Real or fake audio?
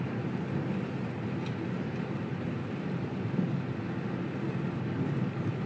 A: real